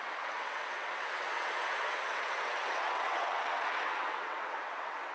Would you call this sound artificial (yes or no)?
yes